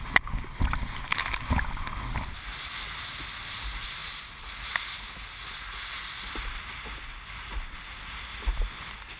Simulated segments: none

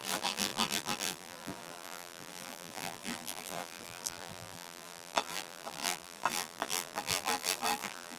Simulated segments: 0.0-8.2 (vocoder, BigVGAN v2)

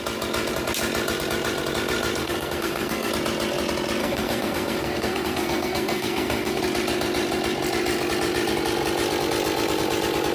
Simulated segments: 2.2-3.1 (codec, SNAC); 4.0-6.6

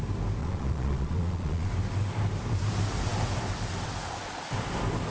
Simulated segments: 0.4-1.7 (vocoder, Vocos)

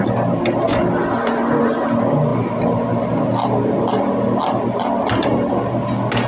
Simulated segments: none